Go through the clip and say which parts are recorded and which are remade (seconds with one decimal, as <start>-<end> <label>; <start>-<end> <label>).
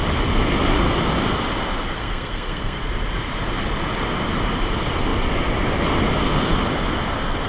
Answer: 0.0-2.0 recorded; 2.0-2.8 remade; 2.8-7.5 recorded